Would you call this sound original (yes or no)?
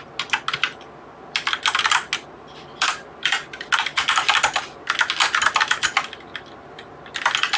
yes